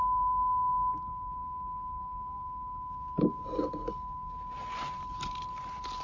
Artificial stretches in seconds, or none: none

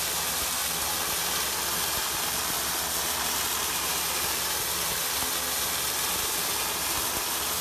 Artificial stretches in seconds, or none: none

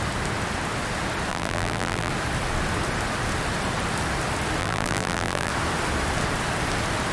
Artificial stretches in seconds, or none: 1.3-2.1; 4.6-5.5

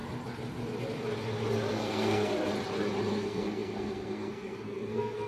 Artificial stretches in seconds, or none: 1.7-2.3; 3.1-5.3